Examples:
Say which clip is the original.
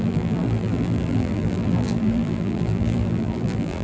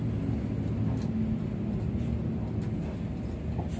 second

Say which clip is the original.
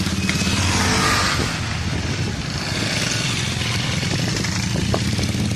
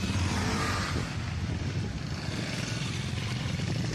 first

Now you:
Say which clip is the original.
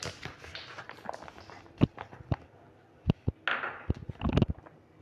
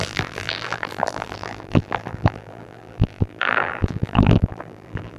first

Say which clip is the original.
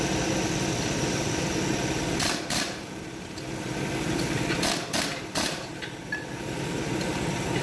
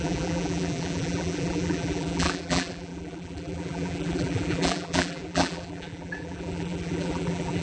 first